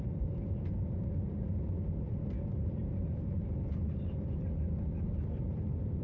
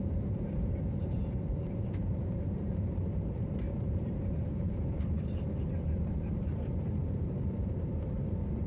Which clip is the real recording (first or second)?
first